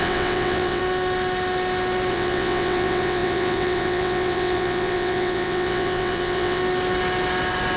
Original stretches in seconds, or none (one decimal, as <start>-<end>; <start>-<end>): 0.8-2.1; 6.6-7.8